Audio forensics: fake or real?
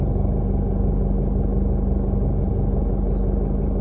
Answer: real